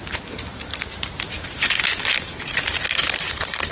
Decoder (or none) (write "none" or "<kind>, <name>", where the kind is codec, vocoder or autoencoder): none